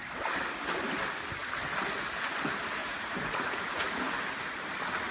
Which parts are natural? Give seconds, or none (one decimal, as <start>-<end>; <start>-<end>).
0.0-2.8; 4.2-5.1